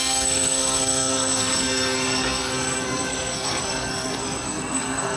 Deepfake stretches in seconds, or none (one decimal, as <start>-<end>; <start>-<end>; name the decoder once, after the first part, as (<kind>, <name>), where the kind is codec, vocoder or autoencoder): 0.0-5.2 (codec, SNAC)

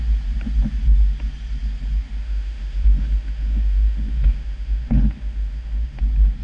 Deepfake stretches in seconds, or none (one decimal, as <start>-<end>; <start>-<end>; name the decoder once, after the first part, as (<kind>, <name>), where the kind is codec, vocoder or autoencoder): 2.2-6.0 (autoencoder, DAC-VAE)

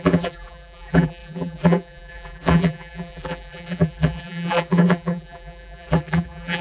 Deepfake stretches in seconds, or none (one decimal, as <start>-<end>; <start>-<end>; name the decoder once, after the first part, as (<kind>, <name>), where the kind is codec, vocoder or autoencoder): 0.0-6.6 (vocoder, BigVGAN v2)

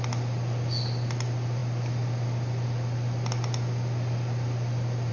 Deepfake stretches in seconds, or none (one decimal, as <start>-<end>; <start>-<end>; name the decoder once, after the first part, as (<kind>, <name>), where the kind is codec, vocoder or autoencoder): none